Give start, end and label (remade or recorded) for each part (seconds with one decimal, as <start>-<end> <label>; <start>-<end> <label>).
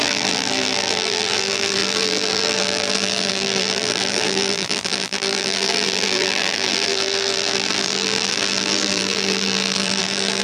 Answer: 0.0-10.4 remade